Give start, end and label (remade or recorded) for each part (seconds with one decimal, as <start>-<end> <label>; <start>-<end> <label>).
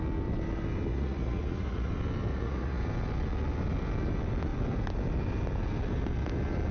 0.0-0.9 recorded; 0.9-1.9 remade; 1.9-2.3 recorded; 2.3-2.8 remade; 2.8-6.7 recorded